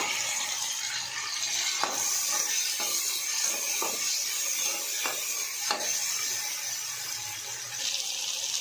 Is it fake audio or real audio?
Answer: real